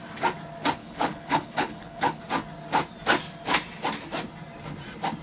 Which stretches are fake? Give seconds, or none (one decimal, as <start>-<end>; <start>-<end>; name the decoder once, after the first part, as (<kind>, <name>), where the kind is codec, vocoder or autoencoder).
0.8-2.2 (codec, HILCodec)